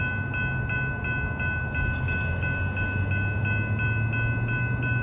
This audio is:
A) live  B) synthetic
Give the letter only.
A